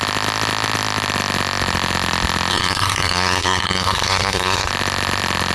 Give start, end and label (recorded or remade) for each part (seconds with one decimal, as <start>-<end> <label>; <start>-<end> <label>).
0.0-2.5 recorded; 2.5-4.7 remade; 4.7-5.5 recorded